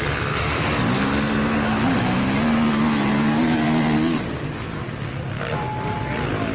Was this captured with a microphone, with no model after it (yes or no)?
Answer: yes